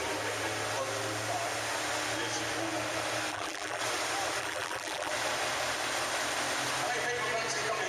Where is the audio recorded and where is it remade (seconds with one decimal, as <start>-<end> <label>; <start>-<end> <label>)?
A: 0.0-3.3 recorded; 3.3-3.8 remade; 3.8-4.4 recorded; 4.4-5.1 remade; 5.1-7.9 recorded

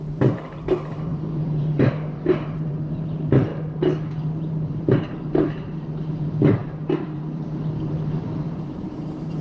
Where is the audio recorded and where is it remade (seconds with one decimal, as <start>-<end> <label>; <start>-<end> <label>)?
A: 0.0-3.5 remade; 3.5-4.1 recorded; 4.1-9.4 remade

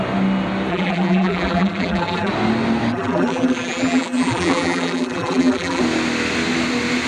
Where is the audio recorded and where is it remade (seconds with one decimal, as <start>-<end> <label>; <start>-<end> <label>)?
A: 0.0-0.7 recorded; 0.7-2.3 remade; 2.3-2.9 recorded; 2.9-5.8 remade; 5.8-7.1 recorded

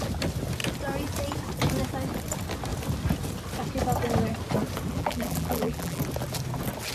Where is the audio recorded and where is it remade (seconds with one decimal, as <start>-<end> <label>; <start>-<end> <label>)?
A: 0.0-4.9 recorded; 4.9-6.0 remade; 6.0-6.9 recorded

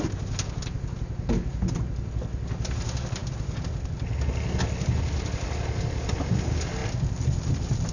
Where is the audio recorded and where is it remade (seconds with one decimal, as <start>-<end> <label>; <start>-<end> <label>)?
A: 0.0-7.9 recorded

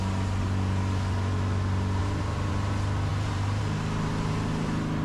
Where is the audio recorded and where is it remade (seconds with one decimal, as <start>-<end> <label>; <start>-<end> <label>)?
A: 0.0-2.0 recorded; 2.0-2.5 remade; 2.5-3.1 recorded; 3.1-3.6 remade; 3.6-5.0 recorded

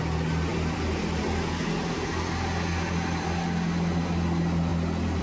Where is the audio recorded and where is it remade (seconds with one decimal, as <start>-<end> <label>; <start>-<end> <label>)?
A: 0.0-5.2 recorded

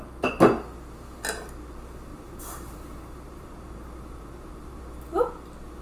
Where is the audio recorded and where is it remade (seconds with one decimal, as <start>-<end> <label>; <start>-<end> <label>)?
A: 0.0-2.1 recorded; 2.1-4.8 remade; 4.8-5.8 recorded